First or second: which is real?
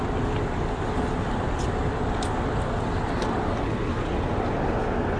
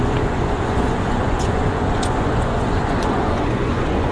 first